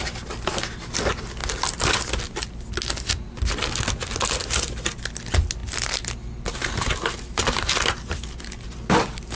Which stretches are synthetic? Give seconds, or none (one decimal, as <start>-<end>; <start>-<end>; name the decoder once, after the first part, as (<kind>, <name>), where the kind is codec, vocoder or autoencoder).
none